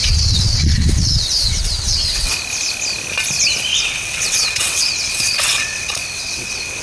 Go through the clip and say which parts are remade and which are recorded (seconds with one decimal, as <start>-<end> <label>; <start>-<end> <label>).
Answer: 0.0-2.3 remade; 2.3-3.7 recorded; 3.7-6.8 remade